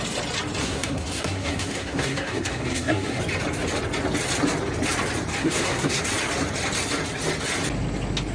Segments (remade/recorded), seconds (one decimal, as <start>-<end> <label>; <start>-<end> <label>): 0.0-0.6 recorded; 0.6-3.2 remade; 3.2-5.4 recorded; 5.4-6.0 remade; 6.0-8.3 recorded